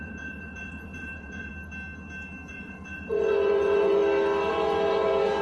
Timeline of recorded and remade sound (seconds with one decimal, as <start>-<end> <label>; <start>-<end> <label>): 0.0-1.5 remade; 1.5-2.5 recorded; 2.5-4.0 remade; 4.0-4.5 recorded; 4.5-5.4 remade